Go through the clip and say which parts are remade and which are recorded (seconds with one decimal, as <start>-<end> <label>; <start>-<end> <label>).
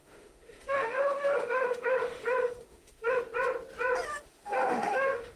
0.0-3.2 remade; 3.2-4.1 recorded; 4.1-5.4 remade